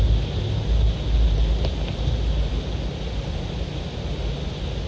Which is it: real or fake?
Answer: real